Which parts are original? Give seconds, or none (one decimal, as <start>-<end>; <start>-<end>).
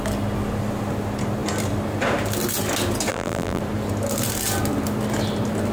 0.0-3.1; 3.6-5.7